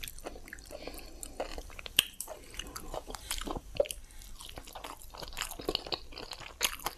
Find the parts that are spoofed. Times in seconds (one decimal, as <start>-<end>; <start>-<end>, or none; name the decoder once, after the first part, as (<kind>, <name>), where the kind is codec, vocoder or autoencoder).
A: 1.5-3.8 (vocoder, BigVGAN v2)